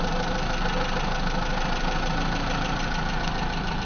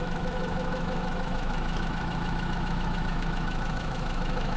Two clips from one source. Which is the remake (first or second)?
second